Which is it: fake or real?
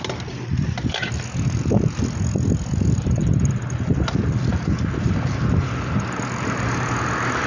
real